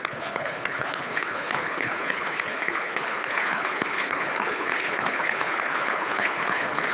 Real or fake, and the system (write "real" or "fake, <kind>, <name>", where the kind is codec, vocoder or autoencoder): fake, codec, HILCodec